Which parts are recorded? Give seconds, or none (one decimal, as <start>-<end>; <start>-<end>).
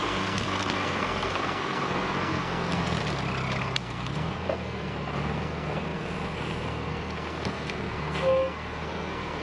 3.0-3.6